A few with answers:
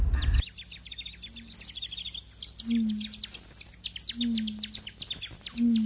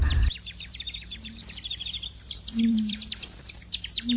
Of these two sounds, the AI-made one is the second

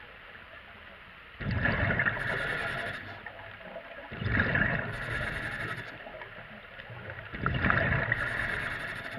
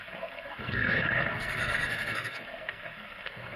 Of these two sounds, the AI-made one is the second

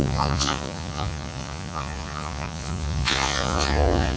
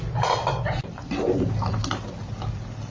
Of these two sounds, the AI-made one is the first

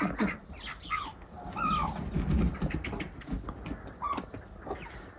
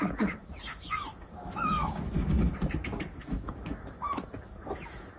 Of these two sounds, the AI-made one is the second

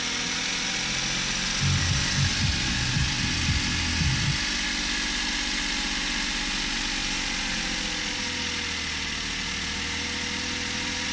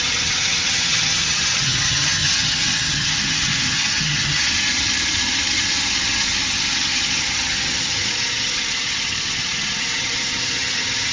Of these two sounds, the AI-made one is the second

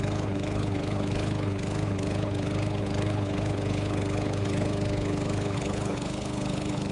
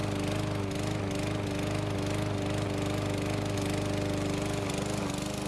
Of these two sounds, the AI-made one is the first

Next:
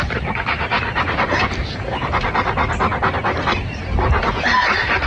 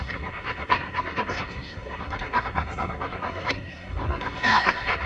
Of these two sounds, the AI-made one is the second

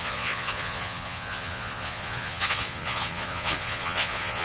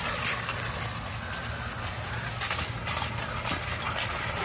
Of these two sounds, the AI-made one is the first